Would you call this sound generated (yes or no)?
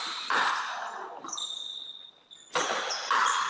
no